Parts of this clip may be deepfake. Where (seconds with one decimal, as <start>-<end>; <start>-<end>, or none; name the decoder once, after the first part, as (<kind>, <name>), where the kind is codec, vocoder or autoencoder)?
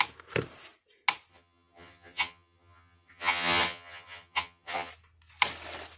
1.3-4.9 (vocoder, HiFi-GAN)